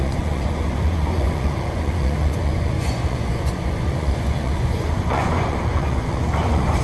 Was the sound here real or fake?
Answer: fake